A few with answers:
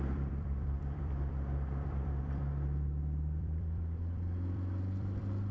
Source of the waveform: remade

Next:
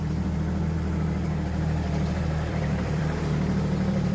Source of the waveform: remade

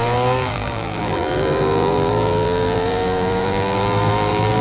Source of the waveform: remade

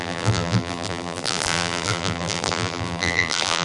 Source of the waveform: remade